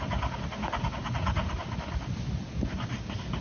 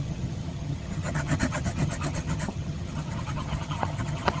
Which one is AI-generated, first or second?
second